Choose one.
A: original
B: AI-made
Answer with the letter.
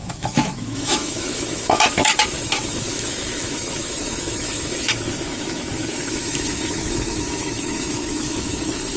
B